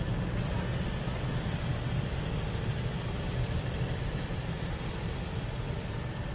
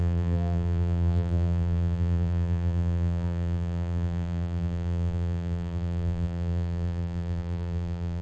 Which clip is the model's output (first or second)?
second